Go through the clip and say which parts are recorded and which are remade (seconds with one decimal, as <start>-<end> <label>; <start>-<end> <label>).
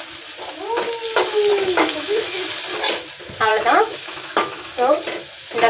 0.0-1.5 recorded; 1.5-2.4 remade; 2.4-3.5 recorded; 3.5-4.9 remade; 4.9-5.7 recorded